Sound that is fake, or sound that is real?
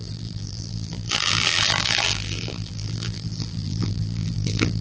fake